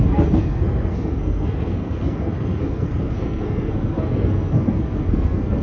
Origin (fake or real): fake